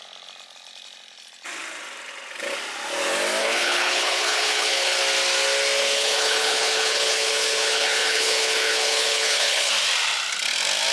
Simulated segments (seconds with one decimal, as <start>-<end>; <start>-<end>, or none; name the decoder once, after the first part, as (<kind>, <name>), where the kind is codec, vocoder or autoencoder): 3.4-5.0 (codec, HILCodec); 5.8-9.7

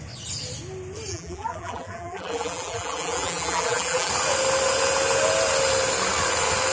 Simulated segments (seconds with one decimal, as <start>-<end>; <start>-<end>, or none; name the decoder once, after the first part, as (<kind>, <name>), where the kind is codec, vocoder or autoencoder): 1.1-4.1 (vocoder, BigVGAN v2)

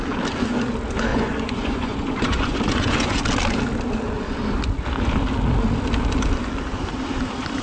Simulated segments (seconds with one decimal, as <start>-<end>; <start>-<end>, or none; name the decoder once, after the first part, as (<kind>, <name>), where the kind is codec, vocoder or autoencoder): 1.1-3.2 (vocoder, Vocos)

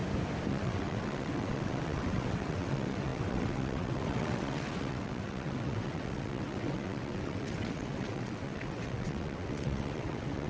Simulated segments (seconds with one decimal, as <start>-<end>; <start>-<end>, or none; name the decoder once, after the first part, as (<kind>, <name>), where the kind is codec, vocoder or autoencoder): 0.5-10.5 (vocoder, WaveNeXt)

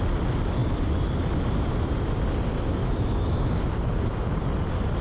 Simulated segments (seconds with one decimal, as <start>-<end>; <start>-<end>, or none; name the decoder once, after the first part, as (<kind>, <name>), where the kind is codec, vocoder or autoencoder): 2.8-3.5 (autoencoder, DAC-VAE)

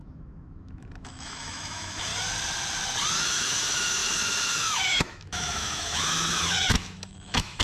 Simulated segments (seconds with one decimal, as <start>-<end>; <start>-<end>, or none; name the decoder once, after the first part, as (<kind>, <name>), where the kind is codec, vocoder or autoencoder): 0.0-2.1 (autoencoder, DAC-VAE); 3.2-7.6